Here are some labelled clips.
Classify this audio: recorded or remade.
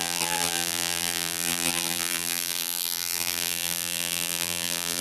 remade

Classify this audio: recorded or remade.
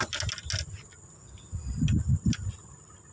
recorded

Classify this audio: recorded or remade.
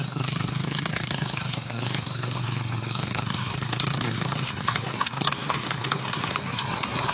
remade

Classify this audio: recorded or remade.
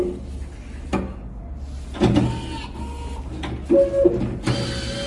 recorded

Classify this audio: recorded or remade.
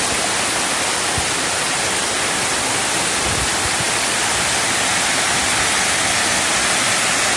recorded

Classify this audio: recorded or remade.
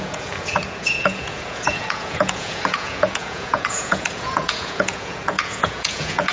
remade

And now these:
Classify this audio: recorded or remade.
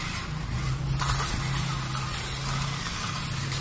recorded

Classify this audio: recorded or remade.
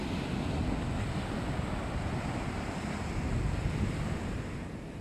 recorded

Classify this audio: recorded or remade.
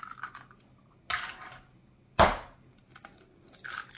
recorded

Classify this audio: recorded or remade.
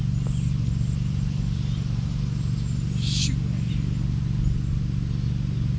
recorded